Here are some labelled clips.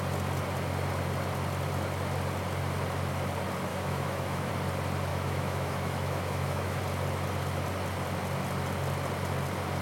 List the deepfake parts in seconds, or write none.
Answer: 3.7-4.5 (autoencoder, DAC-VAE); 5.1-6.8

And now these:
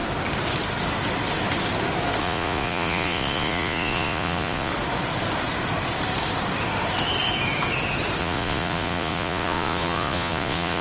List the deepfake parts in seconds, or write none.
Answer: 2.2-4.7 (vocoder, Vocos); 8.2-10.8

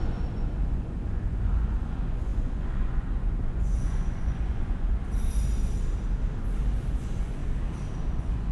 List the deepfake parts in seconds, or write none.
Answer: 0.0-5.0 (vocoder, Vocos); 6.9-7.4; 8.1-8.5

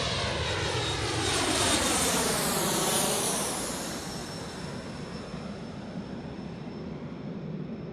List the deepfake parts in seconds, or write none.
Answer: 1.3-2.6 (vocoder, BigVGAN v2)

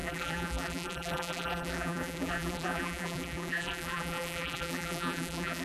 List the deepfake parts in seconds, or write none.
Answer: 0.0-5.6 (vocoder, BigVGAN v2)

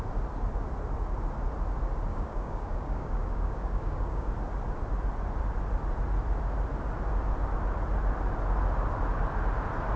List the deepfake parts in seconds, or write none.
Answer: 2.1-4.3 (codec, DAC)

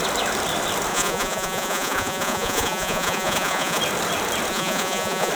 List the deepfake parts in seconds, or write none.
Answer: 0.9-3.8 (vocoder, Vocos); 4.5-5.3

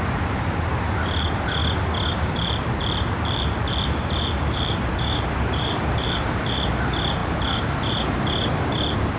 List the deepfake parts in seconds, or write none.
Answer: 0.0-1.6 (vocoder, BigVGAN v2); 2.1-9.2